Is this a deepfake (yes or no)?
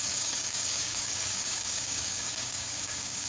yes